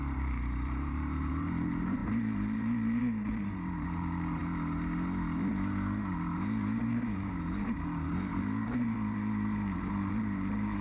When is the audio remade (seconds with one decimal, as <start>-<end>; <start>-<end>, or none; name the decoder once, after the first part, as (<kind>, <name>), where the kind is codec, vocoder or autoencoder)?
0.0-4.4 (vocoder, BigVGAN v2); 5.4-10.8